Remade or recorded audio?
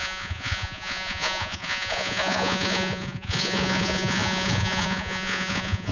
remade